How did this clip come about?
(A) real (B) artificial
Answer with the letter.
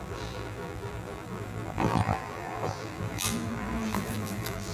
B